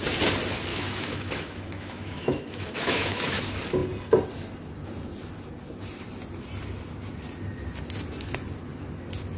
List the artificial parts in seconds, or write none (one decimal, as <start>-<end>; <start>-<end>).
0.7-3.4